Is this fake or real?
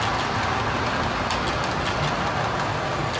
real